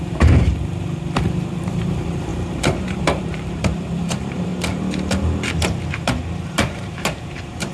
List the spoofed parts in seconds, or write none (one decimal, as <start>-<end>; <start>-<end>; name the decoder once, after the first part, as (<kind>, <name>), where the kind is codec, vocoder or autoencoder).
0.0-0.5 (vocoder, BigVGAN v2); 1.6-4.5; 6.5-7.7